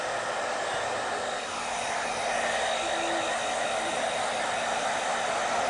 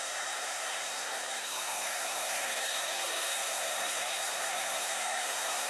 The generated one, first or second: second